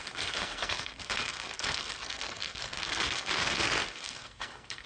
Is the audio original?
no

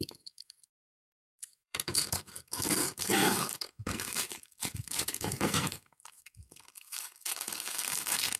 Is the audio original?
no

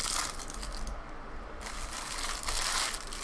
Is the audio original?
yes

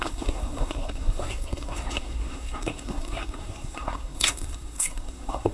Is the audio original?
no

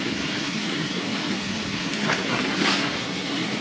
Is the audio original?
no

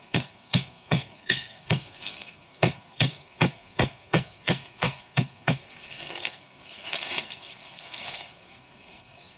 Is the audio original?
no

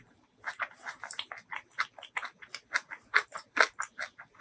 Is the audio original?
yes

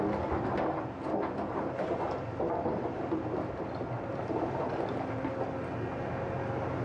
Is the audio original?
yes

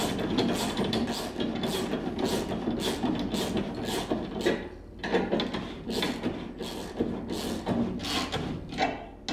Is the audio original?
yes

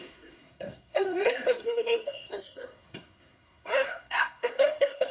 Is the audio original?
no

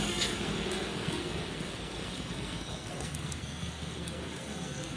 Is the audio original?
no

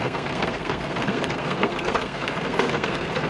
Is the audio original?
no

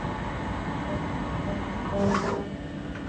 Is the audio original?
yes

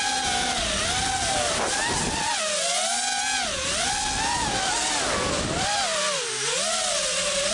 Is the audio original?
yes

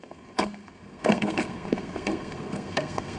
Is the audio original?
no